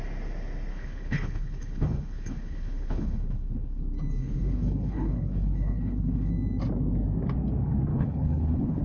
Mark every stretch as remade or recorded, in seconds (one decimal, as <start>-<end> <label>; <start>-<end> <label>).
0.0-0.7 recorded; 0.7-3.8 remade; 3.8-4.2 recorded; 4.2-6.3 remade; 6.3-7.9 recorded; 7.9-8.8 remade